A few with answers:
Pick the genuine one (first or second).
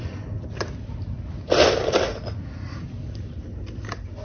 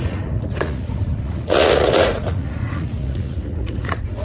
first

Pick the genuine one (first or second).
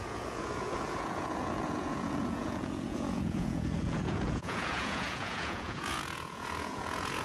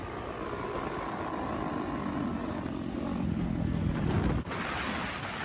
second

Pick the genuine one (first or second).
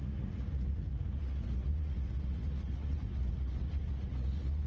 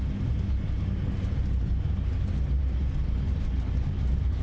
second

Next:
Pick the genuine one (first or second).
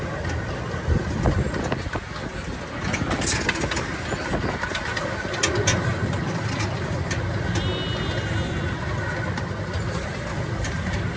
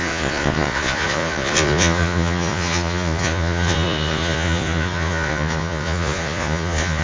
first